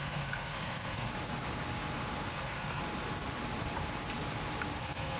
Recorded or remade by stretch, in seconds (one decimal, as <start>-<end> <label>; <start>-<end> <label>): 0.0-1.1 remade; 1.1-2.3 recorded; 2.3-2.8 remade; 2.8-4.8 recorded; 4.8-5.2 remade